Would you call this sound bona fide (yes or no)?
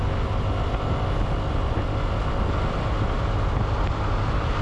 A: yes